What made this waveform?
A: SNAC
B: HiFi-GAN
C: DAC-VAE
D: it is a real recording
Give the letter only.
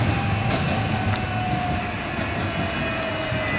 D